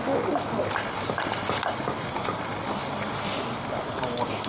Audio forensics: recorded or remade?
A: recorded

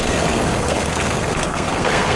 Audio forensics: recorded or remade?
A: remade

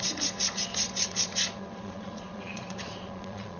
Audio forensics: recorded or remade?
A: remade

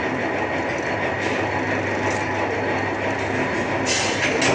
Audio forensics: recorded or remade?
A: recorded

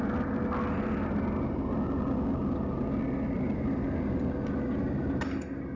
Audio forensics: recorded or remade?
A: recorded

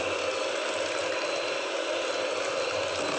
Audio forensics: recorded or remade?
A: recorded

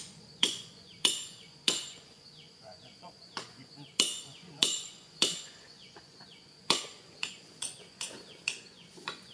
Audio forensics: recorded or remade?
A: remade